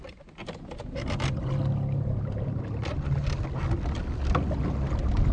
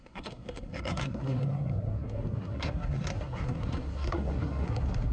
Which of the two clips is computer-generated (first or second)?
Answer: second